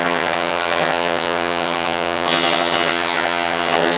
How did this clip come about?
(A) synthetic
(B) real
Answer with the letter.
A